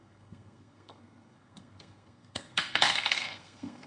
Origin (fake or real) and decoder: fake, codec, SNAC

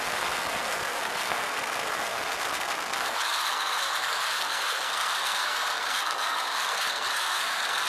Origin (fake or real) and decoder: fake, codec, SNAC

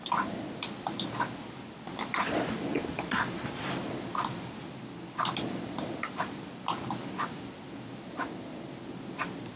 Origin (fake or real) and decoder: fake, vocoder, BigVGAN v2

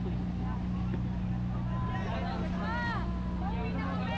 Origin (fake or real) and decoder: real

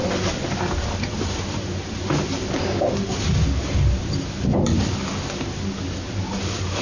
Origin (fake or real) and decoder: real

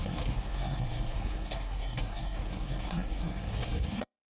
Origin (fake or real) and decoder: fake, codec, SNAC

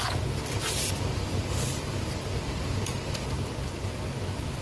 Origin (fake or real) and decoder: real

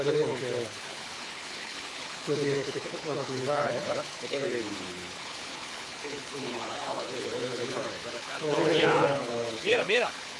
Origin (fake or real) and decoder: fake, codec, HILCodec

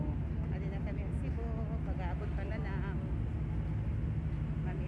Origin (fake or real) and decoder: real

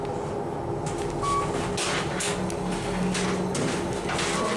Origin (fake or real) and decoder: real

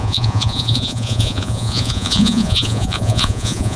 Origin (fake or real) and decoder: fake, vocoder, Vocos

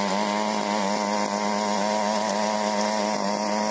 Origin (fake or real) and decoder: real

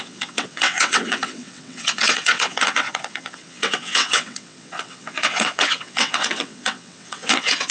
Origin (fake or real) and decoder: fake, vocoder, WaveNeXt